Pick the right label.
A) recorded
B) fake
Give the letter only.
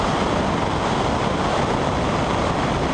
A